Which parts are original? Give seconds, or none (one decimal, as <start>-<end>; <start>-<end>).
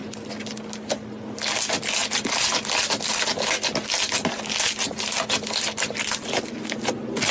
0.0-7.3